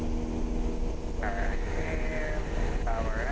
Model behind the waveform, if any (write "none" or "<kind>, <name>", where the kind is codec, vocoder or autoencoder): none